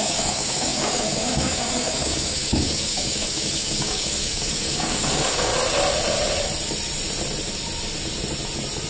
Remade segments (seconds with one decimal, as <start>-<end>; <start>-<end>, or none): 0.0-5.5